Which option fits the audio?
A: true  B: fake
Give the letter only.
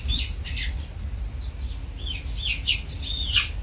A